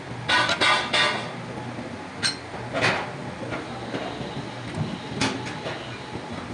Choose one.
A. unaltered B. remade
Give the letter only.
A